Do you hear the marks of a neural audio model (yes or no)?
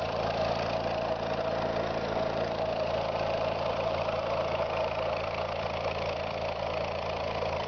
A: yes